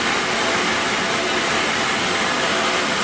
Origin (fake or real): real